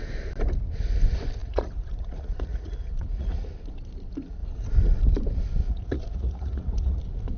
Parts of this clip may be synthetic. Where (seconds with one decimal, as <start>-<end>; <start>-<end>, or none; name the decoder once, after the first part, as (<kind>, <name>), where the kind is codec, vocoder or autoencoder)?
1.4-3.5 (vocoder, Vocos); 5.6-7.0